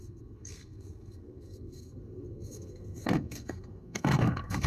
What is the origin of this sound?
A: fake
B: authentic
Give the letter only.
A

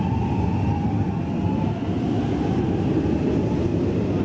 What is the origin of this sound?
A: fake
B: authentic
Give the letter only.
B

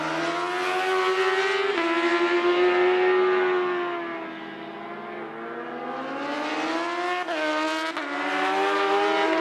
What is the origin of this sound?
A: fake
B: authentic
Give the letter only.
B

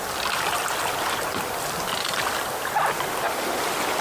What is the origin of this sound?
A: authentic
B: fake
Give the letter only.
A